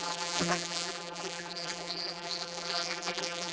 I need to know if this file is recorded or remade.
remade